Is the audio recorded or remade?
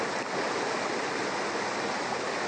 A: recorded